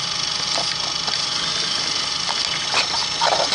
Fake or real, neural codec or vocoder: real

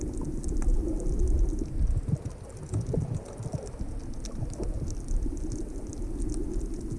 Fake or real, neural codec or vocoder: real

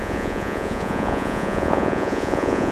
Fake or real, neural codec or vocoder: fake, vocoder, Vocos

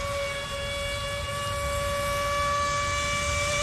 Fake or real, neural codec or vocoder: real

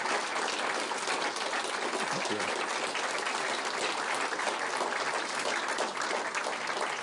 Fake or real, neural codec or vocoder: real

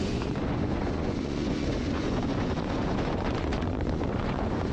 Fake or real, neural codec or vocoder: fake, vocoder, Vocos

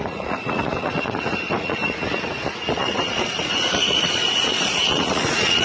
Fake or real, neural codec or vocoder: fake, vocoder, Vocos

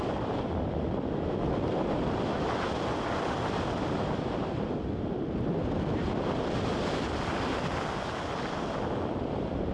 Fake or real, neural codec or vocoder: real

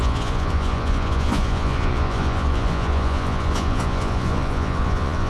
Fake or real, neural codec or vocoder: fake, vocoder, Vocos